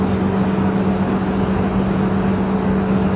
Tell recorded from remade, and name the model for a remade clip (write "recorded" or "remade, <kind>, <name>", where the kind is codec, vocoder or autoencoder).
recorded